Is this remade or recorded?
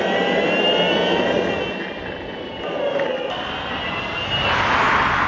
recorded